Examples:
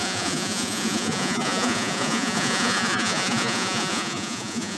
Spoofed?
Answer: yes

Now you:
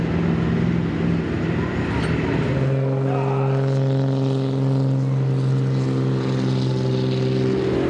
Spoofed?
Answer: no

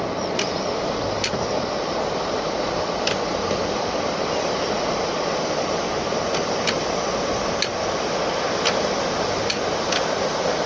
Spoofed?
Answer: no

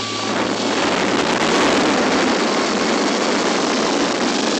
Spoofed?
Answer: no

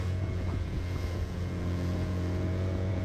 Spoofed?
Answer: yes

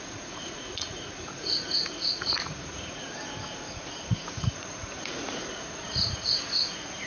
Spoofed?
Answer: yes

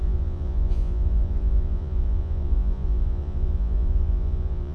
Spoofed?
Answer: yes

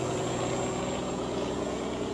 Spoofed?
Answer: yes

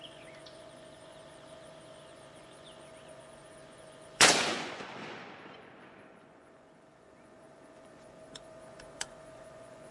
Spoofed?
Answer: yes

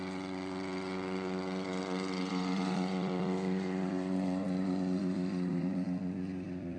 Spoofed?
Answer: yes